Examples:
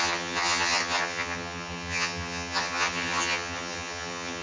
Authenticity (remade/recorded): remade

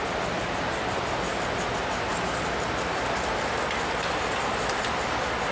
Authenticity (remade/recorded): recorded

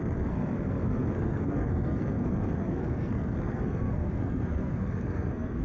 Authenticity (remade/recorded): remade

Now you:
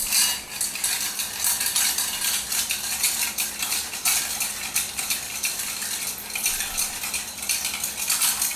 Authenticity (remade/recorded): recorded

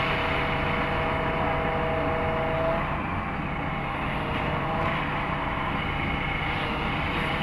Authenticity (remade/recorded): recorded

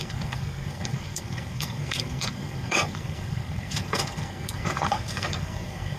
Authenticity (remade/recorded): remade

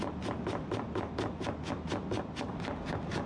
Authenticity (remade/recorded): recorded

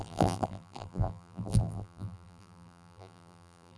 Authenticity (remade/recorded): remade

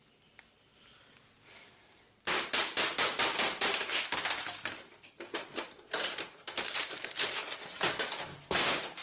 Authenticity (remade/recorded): remade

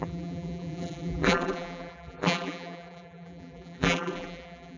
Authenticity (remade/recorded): remade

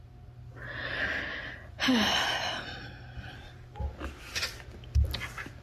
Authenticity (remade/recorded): recorded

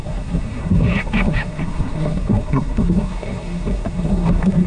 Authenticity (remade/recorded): remade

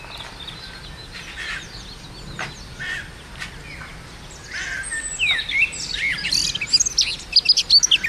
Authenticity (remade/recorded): recorded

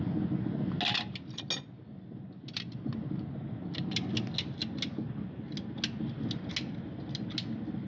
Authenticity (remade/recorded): recorded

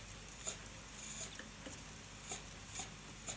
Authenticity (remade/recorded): recorded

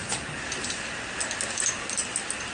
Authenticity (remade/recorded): recorded